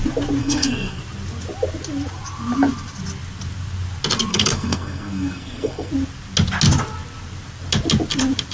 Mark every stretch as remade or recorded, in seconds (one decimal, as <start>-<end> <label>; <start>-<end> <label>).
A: 0.0-0.4 recorded; 0.4-1.0 remade; 1.0-4.3 recorded; 4.3-5.9 remade; 5.9-8.5 recorded